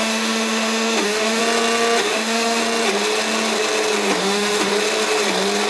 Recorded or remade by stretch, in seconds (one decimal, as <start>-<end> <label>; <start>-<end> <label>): 0.0-1.4 remade; 1.4-2.0 recorded; 2.0-2.6 remade; 2.6-4.2 recorded; 4.2-4.7 remade; 4.7-5.7 recorded